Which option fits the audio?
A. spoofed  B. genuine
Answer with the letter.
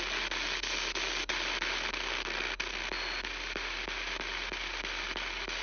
B